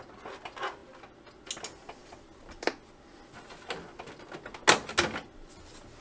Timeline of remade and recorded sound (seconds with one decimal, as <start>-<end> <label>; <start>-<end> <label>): 0.0-6.0 recorded

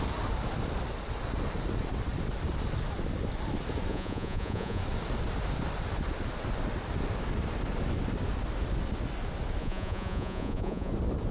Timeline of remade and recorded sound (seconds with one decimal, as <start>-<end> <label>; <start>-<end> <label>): 0.0-3.9 recorded; 3.9-4.8 remade; 4.8-9.6 recorded; 9.6-10.9 remade; 10.9-11.3 recorded

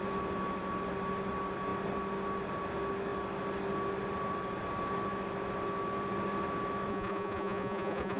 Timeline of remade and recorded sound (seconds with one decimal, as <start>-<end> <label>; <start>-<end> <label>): 0.0-6.9 recorded; 6.9-8.2 remade

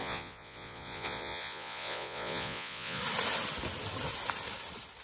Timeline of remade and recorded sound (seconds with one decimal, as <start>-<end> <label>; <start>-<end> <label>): 0.0-3.0 remade; 3.0-5.0 recorded

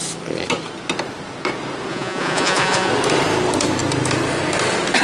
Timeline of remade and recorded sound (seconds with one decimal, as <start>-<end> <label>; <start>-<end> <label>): 0.0-1.9 recorded; 1.9-2.9 remade; 2.9-5.0 recorded

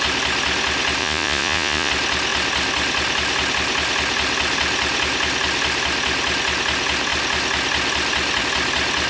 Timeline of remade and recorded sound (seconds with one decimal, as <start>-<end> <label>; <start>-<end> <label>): 0.0-1.0 recorded; 1.0-1.9 remade; 1.9-9.1 recorded

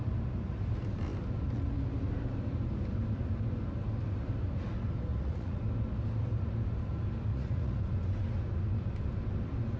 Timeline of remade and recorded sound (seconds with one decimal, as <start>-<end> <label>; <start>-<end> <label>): 0.0-5.1 recorded; 5.1-5.6 remade; 5.6-7.3 recorded; 7.3-7.8 remade; 7.8-9.8 recorded